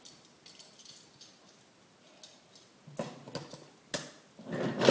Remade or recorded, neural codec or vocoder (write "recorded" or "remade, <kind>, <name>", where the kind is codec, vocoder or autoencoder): recorded